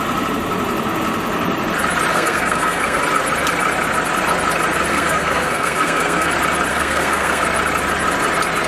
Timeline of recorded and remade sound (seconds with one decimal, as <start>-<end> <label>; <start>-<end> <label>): 0.0-2.1 recorded; 2.1-3.0 remade; 3.0-4.9 recorded; 4.9-6.3 remade; 6.3-6.7 recorded; 6.7-7.4 remade; 7.4-8.7 recorded